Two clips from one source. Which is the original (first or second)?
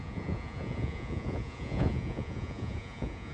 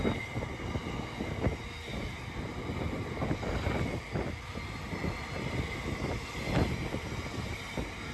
second